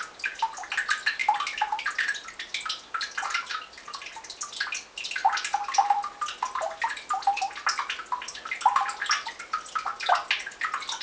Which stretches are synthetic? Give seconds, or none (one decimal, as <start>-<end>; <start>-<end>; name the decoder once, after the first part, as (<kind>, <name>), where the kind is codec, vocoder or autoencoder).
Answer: none